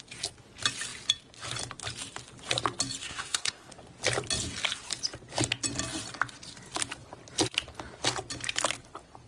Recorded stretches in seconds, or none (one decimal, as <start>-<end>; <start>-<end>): 0.0-3.0; 3.7-9.3